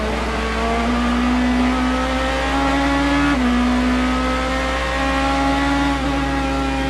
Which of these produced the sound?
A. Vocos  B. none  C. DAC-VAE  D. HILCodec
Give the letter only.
B